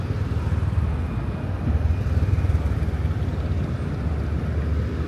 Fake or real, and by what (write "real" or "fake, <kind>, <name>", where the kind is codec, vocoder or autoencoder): real